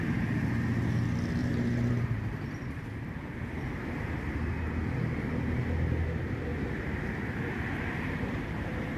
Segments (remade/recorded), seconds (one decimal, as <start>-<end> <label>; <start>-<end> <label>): 0.0-1.4 recorded; 1.4-3.4 remade; 3.4-6.5 recorded; 6.5-9.0 remade